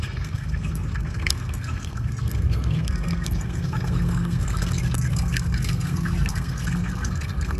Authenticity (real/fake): fake